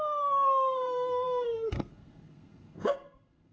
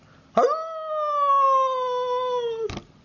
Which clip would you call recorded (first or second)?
second